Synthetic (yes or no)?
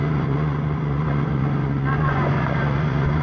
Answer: yes